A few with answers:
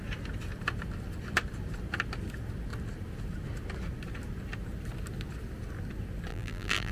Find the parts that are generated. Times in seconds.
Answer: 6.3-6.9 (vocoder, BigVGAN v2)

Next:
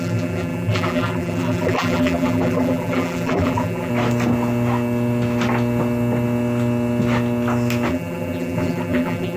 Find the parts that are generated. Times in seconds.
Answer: 0.0-3.9 (vocoder, BigVGAN v2); 7.9-9.4

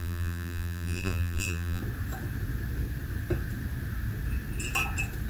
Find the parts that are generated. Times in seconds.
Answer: 0.0-1.8 (vocoder, BigVGAN v2)

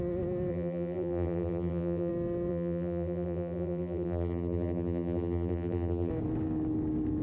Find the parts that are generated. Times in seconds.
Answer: 0.5-2.1 (vocoder, BigVGAN v2); 2.5-6.1